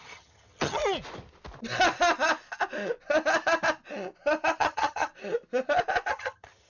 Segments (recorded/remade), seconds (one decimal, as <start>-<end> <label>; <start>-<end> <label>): 0.0-0.8 remade; 0.8-4.6 recorded; 4.6-5.1 remade; 5.1-6.1 recorded; 6.1-6.7 remade